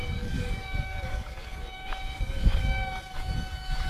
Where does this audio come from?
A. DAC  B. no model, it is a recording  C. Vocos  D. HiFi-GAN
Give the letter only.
A